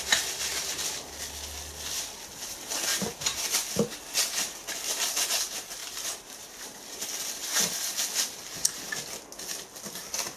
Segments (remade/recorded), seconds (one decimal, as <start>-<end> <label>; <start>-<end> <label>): 0.0-5.8 recorded; 5.8-6.4 remade; 6.4-10.4 recorded